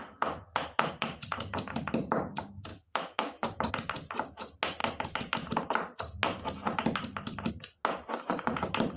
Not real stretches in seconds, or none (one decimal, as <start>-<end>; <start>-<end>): 2.7-3.7